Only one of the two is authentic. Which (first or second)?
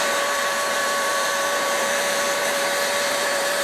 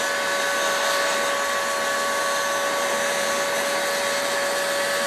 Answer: second